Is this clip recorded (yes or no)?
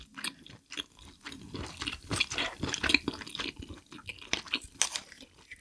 yes